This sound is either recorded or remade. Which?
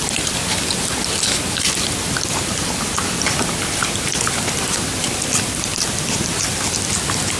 remade